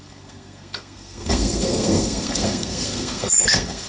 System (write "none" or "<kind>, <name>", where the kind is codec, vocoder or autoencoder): codec, SNAC